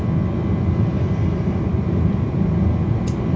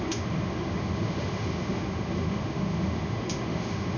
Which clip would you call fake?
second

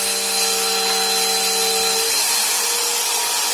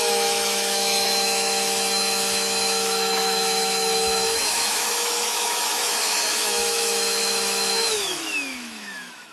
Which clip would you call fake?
second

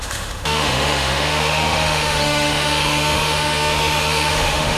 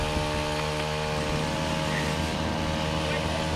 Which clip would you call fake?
first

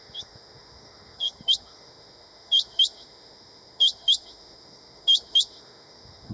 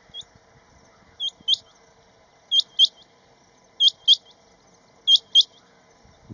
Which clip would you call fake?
first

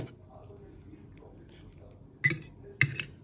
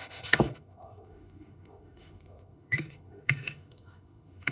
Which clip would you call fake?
second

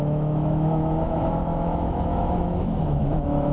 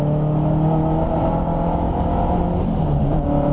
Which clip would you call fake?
first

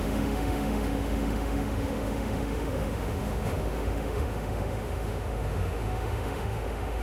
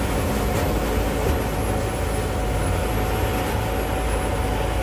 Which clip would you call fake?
first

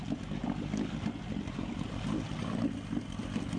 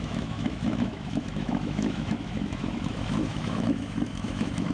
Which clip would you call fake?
second